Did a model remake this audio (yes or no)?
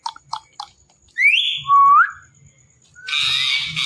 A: no